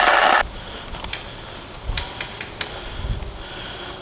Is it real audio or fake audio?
real